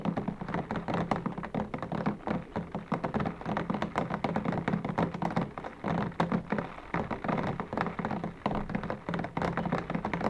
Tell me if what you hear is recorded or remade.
recorded